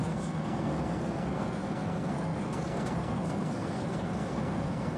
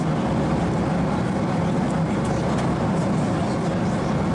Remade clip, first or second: first